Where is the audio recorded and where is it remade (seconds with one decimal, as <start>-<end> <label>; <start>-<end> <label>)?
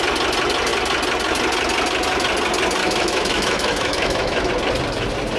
0.0-2.8 recorded; 2.8-4.5 remade; 4.5-5.4 recorded